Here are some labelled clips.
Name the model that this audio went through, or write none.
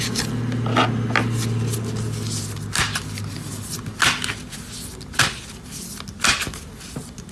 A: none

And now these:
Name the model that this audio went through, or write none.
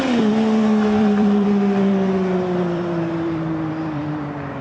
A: vocoder, BigVGAN v2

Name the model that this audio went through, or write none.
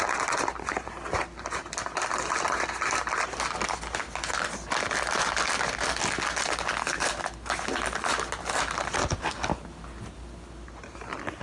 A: none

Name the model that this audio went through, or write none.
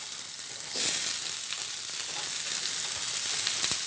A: none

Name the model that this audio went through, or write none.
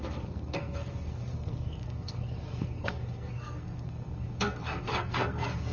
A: codec, SNAC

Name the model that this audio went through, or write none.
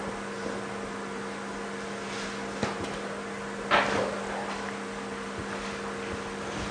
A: none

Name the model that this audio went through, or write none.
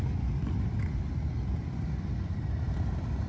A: none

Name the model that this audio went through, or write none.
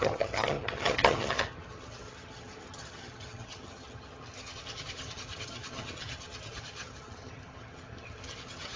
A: vocoder, HiFi-GAN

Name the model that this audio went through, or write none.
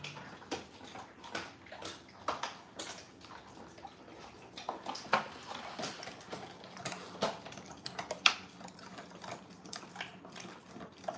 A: none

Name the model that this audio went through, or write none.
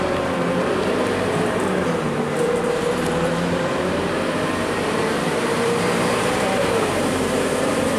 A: vocoder, BigVGAN v2